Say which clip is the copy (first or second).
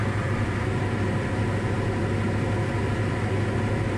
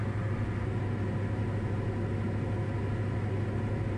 first